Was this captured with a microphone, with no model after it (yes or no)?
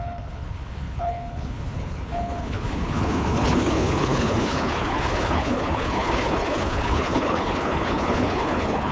no